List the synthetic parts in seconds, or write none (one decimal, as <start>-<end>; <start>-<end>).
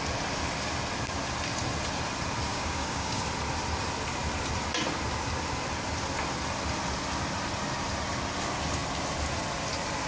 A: 2.5-3.2